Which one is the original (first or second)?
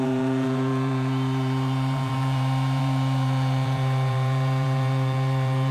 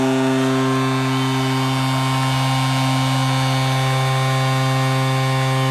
second